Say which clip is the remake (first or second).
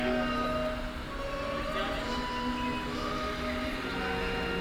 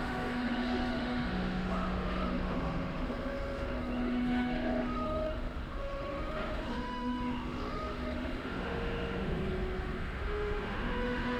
second